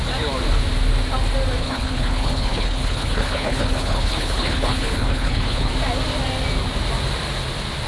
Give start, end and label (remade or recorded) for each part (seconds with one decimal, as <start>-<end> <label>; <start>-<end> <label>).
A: 0.0-1.6 recorded; 1.6-5.7 remade; 5.7-7.9 recorded